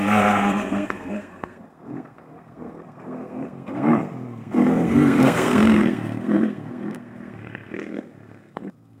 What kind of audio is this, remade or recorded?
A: remade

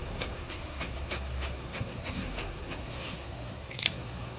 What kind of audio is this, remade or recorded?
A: remade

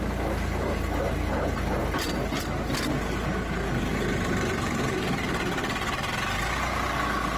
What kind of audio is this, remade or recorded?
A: recorded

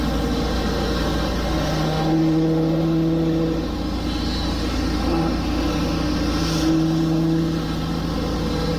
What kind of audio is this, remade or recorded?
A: recorded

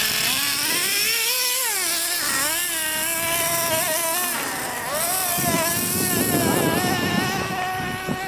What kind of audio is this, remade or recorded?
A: recorded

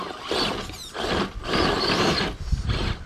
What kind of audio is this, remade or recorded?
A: recorded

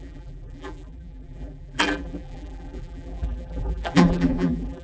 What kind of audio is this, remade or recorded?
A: remade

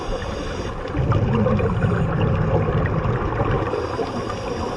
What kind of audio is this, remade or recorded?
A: recorded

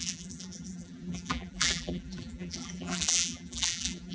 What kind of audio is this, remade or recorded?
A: remade